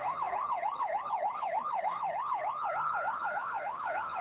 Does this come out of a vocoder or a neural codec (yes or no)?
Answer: yes